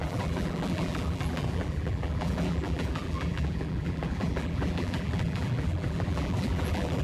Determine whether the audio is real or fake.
fake